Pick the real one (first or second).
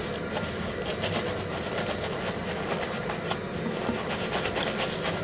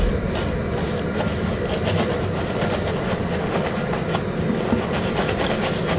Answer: first